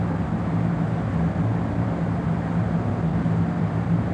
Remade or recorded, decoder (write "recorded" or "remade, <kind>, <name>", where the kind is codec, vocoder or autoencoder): recorded